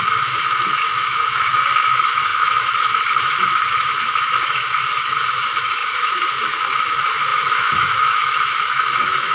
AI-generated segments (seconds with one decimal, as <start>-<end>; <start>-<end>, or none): 0.0-9.3